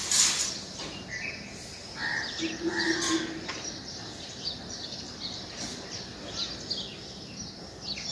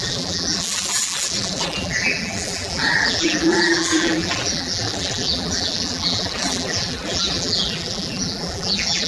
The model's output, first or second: second